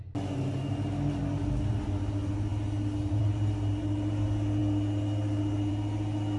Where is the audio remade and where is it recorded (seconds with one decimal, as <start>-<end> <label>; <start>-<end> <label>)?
0.0-6.4 recorded